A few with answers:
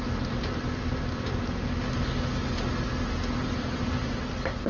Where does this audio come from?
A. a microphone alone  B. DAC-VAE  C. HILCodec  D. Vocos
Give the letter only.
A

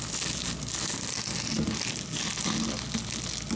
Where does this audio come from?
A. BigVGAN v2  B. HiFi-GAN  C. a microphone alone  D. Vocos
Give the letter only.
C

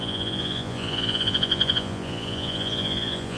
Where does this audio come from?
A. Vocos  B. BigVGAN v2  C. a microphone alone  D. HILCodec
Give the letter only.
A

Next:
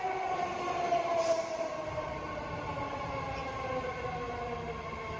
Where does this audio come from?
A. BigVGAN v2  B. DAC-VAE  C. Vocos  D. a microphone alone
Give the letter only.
D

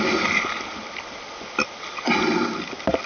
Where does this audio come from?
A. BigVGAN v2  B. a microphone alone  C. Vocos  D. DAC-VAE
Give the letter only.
B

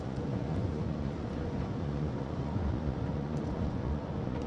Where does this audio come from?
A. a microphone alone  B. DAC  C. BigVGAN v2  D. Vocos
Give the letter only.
D